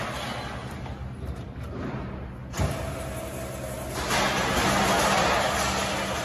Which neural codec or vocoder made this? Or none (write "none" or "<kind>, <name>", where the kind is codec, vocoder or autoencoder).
none